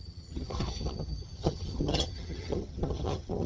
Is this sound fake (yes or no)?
yes